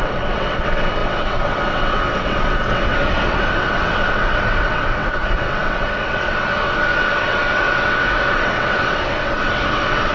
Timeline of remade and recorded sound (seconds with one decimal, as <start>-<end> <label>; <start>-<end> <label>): 0.0-10.1 remade

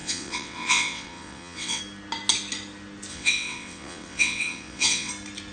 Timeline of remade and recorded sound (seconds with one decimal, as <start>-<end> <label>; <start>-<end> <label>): 0.0-1.8 remade; 1.8-3.1 recorded; 3.1-5.1 remade; 5.1-5.5 recorded

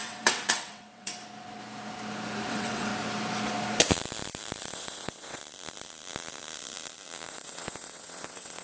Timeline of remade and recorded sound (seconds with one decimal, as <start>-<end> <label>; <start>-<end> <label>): 0.0-1.1 remade; 1.1-2.5 recorded; 2.5-2.9 remade; 2.9-4.6 recorded; 4.6-5.4 remade; 5.4-7.3 recorded; 7.3-8.6 remade